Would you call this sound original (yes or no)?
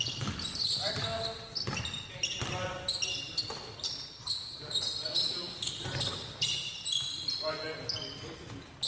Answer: yes